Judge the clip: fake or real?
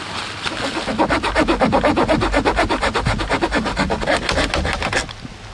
real